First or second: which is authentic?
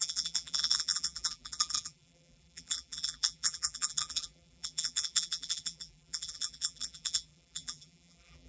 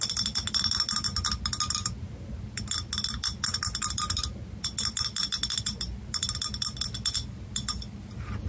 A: second